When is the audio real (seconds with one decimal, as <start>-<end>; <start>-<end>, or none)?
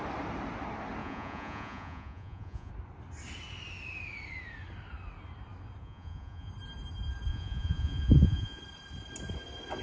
0.0-1.0; 2.7-5.8; 6.5-7.3; 8.6-9.8